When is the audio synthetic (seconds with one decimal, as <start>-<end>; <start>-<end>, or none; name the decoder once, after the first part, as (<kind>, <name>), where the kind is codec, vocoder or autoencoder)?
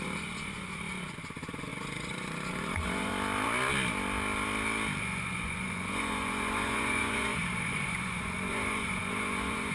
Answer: 0.0-3.1 (vocoder, Vocos); 5.0-9.7